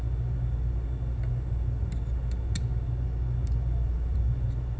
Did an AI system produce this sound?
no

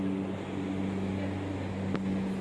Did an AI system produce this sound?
no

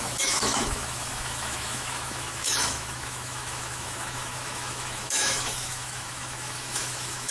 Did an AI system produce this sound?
yes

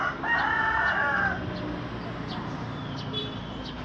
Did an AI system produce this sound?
no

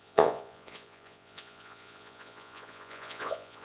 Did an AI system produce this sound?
yes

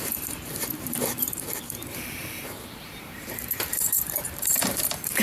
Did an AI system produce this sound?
yes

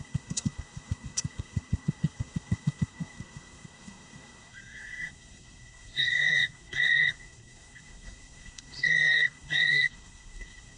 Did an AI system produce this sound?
yes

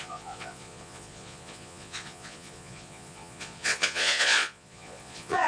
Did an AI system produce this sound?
yes